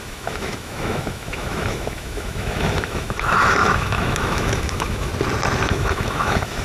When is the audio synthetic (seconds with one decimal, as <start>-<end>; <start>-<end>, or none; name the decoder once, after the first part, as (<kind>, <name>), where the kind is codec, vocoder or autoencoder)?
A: 0.0-5.1 (autoencoder, DAC-VAE); 5.7-6.6